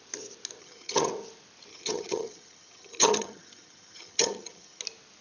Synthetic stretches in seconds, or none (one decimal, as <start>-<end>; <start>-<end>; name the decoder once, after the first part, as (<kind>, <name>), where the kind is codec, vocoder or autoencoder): 0.6-1.1 (vocoder, HiFi-GAN); 1.7-4.8